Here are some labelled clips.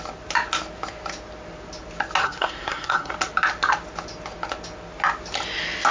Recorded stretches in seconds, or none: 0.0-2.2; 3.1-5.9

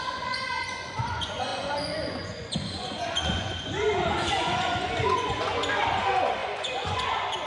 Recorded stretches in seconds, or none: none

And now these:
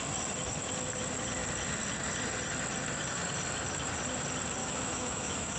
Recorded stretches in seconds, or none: 0.0-4.6

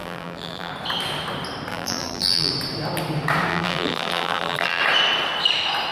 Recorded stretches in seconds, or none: 0.7-1.7; 2.5-3.5; 4.8-5.9

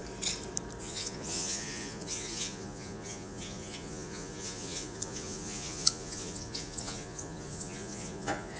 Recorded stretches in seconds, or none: 0.0-0.8